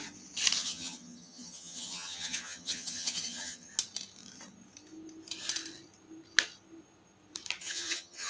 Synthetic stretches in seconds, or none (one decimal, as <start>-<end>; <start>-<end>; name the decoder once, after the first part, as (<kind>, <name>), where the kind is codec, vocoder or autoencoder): 0.6-3.7 (vocoder, HiFi-GAN); 7.6-8.3